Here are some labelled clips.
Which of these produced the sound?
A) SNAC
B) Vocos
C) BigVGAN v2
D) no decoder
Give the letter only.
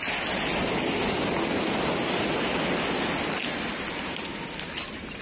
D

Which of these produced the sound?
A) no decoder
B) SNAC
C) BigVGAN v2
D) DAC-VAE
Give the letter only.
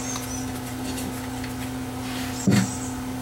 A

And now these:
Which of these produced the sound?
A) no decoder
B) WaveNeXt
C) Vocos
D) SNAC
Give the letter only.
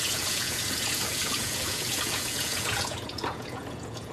C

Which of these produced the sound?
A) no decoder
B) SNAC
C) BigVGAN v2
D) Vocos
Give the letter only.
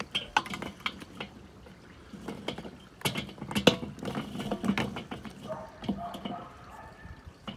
A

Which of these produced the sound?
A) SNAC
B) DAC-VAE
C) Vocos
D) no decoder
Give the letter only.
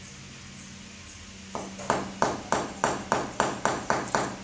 D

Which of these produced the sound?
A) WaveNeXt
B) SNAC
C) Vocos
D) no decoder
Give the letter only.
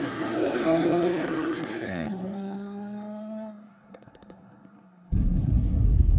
B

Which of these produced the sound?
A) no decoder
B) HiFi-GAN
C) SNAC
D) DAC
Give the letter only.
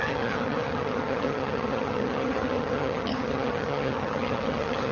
B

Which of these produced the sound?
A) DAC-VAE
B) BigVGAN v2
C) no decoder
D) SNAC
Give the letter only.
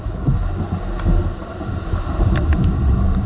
C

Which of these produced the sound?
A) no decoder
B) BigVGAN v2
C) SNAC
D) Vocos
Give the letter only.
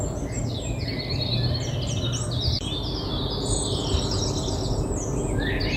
A